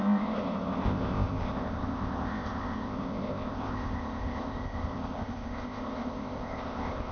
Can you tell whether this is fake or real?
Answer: fake